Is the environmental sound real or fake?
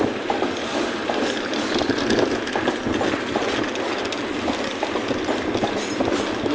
real